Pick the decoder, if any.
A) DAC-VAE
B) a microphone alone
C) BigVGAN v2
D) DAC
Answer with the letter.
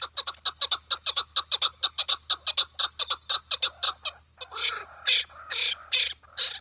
B